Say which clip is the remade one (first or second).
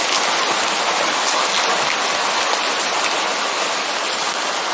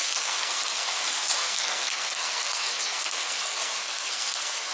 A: second